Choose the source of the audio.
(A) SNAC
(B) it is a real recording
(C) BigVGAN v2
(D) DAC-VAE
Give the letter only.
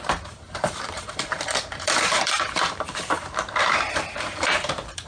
C